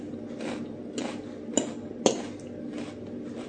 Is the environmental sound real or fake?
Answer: real